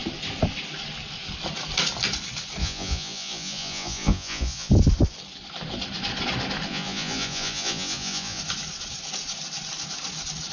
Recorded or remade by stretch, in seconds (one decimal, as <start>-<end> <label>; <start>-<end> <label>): 0.0-2.6 recorded; 2.6-4.7 remade; 4.7-6.7 recorded; 6.7-8.4 remade; 8.4-10.5 recorded